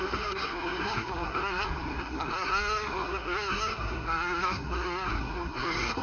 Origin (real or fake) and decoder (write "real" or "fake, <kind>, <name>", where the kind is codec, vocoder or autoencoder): fake, codec, SNAC